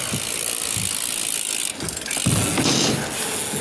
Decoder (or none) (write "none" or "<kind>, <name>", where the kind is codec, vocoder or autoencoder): none